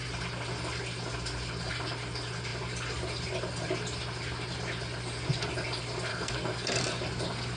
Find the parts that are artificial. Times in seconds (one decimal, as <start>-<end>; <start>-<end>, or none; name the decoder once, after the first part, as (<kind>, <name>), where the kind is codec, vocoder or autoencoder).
6.1-6.8 (codec, SNAC)